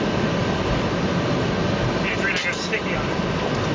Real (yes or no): yes